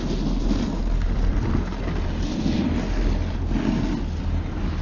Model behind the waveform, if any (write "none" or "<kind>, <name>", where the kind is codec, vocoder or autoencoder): none